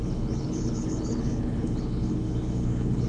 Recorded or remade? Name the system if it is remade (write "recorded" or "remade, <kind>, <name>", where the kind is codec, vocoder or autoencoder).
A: remade, codec, HILCodec